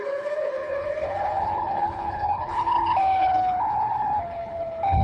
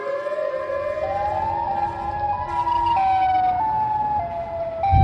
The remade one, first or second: first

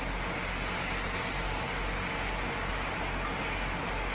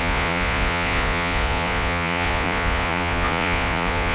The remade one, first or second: second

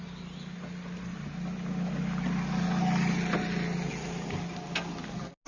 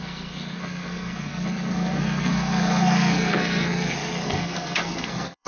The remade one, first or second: second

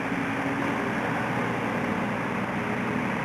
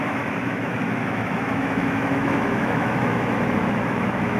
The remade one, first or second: second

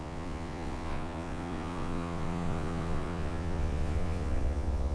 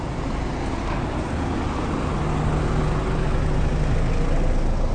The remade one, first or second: first